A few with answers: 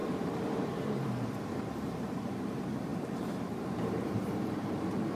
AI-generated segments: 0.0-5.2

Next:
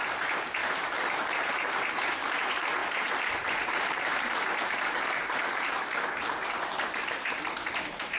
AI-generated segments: 0.0-0.6; 1.2-8.2